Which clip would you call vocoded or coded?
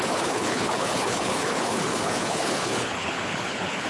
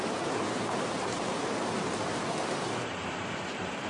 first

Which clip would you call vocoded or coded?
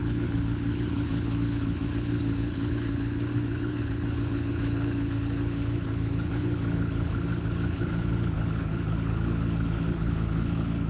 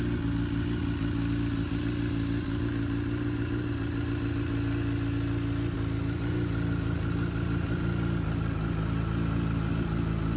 first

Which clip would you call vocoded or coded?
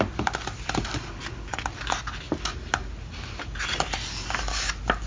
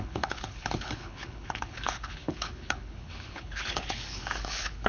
second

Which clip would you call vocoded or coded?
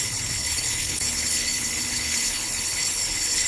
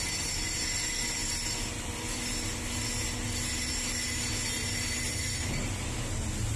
first